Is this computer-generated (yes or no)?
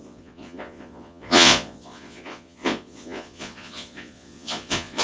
yes